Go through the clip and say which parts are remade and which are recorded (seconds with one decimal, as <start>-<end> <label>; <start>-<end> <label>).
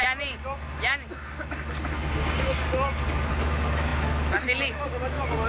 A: 0.0-3.3 recorded; 3.3-5.5 remade